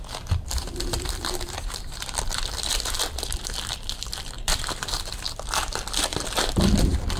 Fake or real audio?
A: fake